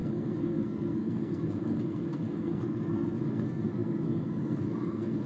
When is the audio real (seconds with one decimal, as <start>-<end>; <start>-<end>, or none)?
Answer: none